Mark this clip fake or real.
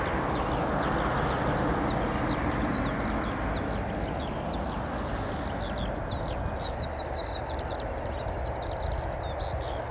real